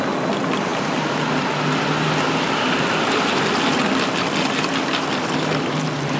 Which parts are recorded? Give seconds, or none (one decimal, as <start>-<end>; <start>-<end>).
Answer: 0.0-6.2

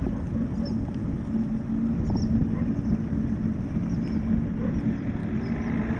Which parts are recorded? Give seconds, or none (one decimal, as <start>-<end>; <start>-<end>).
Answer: 0.0-6.0

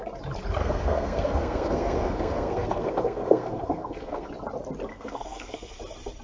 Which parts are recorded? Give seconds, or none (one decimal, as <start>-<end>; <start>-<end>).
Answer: 0.0-0.6; 4.3-4.9; 5.8-6.2

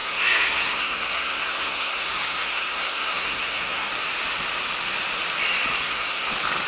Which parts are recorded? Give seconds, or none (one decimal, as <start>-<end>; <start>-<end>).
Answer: 3.9-5.7; 6.3-6.7

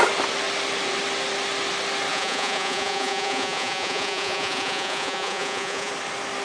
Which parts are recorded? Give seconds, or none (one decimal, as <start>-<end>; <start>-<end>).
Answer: 0.0-2.1; 5.9-6.4